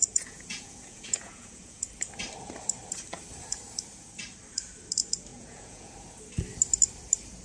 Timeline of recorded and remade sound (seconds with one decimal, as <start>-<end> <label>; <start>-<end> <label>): 0.0-1.9 remade; 1.9-5.3 recorded; 5.3-5.9 remade; 5.9-7.4 recorded